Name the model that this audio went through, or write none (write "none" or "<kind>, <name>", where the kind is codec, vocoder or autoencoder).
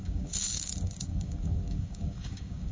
codec, DAC